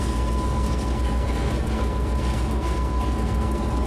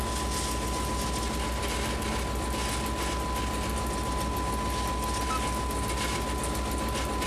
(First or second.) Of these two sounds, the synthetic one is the first